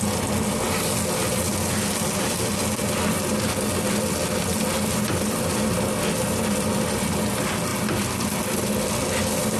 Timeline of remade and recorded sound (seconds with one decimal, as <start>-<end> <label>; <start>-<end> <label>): 0.0-9.6 recorded